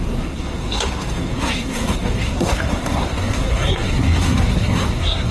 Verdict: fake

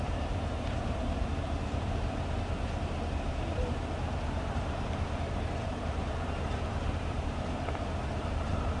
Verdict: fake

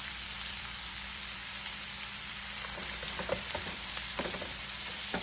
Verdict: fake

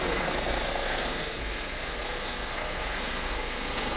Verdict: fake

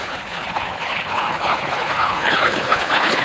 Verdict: fake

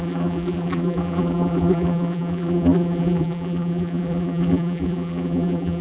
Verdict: fake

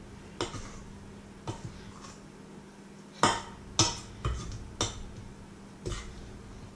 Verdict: real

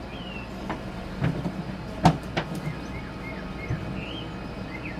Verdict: real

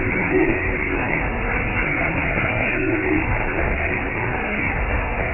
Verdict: fake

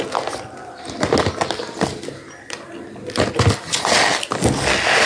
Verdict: real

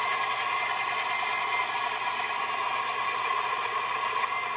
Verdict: real